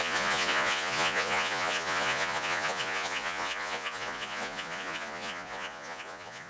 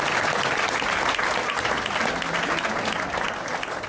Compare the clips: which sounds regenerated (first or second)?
first